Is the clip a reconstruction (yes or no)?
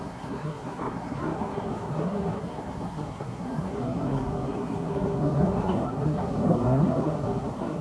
yes